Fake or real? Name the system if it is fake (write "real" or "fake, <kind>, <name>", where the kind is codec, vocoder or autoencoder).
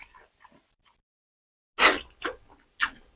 real